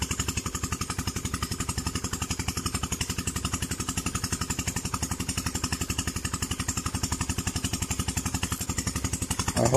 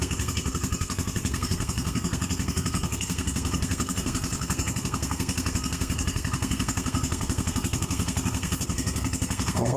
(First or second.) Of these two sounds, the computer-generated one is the second